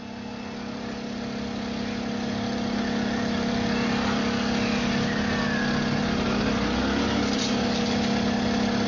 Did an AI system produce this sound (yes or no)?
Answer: no